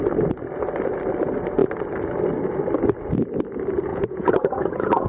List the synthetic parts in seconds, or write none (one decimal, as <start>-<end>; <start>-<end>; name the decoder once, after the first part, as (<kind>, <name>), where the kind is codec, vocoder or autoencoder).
3.9-5.1 (vocoder, Vocos)